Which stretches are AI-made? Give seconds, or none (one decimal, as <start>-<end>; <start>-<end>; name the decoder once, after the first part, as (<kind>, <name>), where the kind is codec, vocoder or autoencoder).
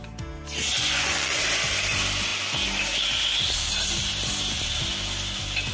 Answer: 0.7-1.4 (vocoder, Vocos)